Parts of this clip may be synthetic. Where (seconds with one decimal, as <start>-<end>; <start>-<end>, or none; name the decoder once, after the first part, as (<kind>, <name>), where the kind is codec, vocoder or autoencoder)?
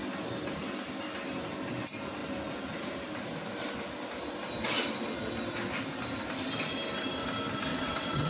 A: 7.7-8.3 (vocoder, WaveNeXt)